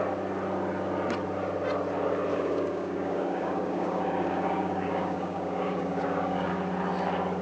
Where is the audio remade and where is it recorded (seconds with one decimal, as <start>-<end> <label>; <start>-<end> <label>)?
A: 0.0-2.3 recorded; 2.3-6.5 remade; 6.5-7.4 recorded